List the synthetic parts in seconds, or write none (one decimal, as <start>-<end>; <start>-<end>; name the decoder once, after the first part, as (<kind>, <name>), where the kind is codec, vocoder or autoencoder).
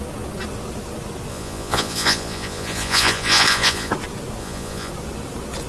1.3-3.9 (vocoder, Vocos); 4.4-4.9